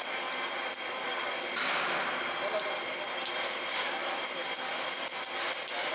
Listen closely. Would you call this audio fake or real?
real